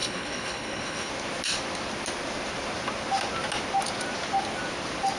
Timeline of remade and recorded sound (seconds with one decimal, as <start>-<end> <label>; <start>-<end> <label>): 0.0-1.1 remade; 1.1-5.2 recorded